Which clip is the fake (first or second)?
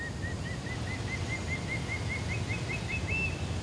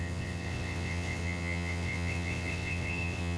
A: second